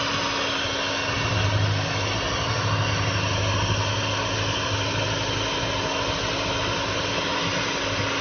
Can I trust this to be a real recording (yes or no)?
yes